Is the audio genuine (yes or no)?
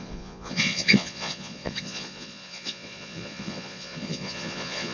no